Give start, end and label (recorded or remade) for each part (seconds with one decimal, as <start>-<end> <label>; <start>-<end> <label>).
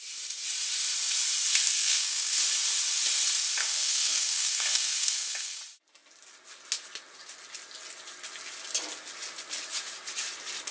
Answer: 0.0-1.5 recorded; 1.5-2.3 remade; 2.3-3.6 recorded; 3.6-5.6 remade; 5.6-10.7 recorded